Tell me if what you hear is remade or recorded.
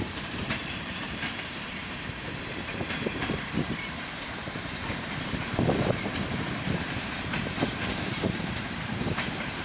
remade